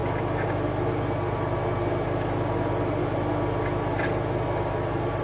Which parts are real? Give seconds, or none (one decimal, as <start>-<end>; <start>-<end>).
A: 0.0-5.2